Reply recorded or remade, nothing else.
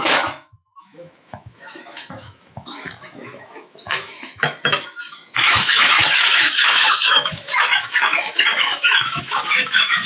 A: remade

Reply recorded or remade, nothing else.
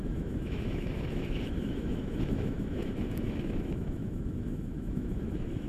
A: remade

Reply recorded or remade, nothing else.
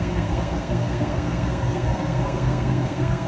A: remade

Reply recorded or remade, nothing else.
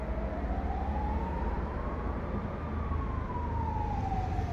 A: recorded